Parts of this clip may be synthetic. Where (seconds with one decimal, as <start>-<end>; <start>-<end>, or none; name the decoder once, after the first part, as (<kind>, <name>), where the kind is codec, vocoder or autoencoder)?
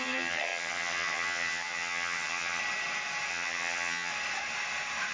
0.0-2.6 (vocoder, HiFi-GAN); 3.3-4.1